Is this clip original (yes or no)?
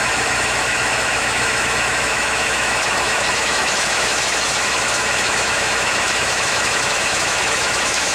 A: no